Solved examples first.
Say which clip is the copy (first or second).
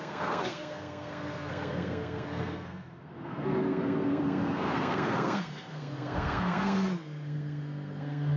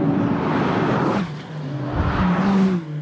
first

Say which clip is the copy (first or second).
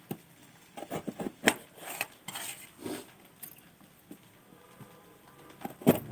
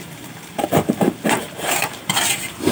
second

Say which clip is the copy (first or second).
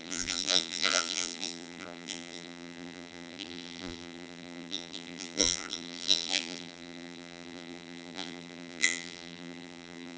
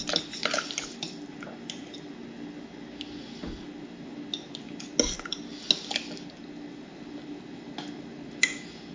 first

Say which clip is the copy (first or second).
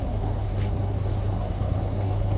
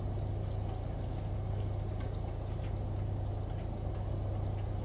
first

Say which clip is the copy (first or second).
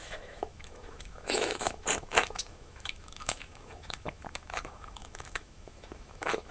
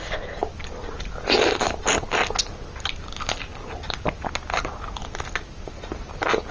first